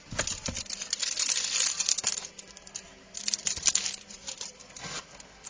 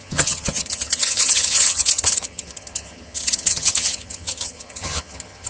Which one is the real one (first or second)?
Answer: first